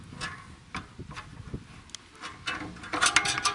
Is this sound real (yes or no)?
yes